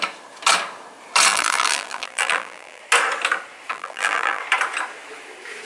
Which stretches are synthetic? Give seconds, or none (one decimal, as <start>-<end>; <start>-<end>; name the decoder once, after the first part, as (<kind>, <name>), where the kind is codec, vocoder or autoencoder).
1.3-2.8 (vocoder, BigVGAN v2); 3.7-4.4